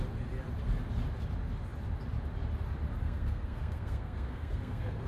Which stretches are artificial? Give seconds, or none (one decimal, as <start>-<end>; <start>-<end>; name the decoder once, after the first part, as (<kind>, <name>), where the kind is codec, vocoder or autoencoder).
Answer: 3.0-5.1 (codec, SNAC)